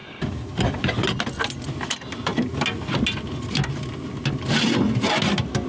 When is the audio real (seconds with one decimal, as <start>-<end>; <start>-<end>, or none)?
0.0-5.7